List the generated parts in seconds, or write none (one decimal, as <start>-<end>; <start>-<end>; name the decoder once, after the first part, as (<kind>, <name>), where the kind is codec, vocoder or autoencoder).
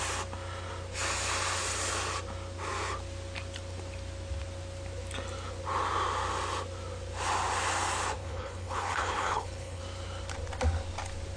8.2-9.8 (codec, HILCodec)